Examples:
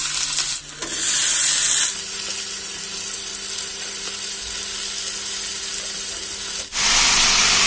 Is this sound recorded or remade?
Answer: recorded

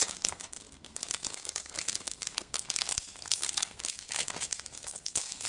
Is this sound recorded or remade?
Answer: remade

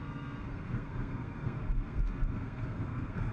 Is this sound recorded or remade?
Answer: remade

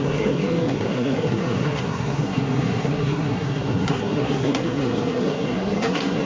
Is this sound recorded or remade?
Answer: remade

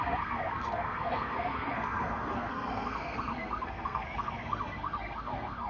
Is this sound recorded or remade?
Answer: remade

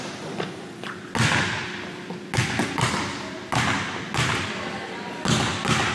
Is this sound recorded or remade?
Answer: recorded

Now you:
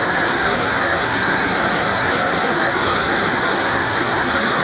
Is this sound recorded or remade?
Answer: remade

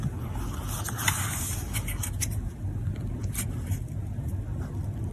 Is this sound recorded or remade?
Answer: recorded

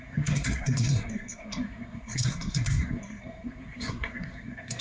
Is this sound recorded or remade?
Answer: remade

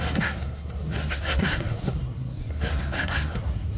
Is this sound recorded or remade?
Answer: remade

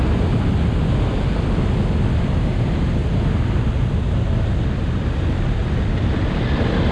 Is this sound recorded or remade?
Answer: recorded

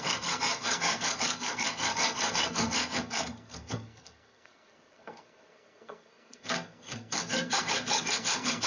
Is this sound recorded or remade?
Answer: remade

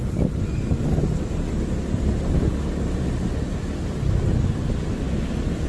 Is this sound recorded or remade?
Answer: recorded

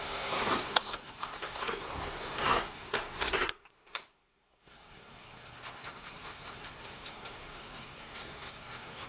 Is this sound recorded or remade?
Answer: remade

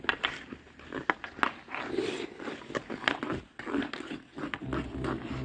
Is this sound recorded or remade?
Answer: recorded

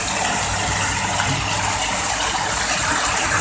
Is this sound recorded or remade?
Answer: recorded